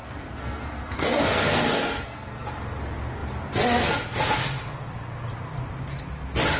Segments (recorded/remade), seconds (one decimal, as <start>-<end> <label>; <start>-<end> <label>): 0.0-2.5 remade; 2.5-6.6 recorded